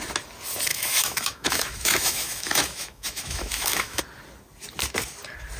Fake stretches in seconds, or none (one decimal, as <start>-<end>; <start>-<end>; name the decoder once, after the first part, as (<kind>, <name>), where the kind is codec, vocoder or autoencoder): 0.7-4.0 (autoencoder, DAC-VAE)